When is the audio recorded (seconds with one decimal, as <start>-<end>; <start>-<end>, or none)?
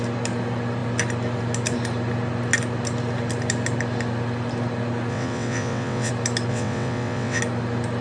0.0-5.1; 6.1-6.5; 7.4-8.0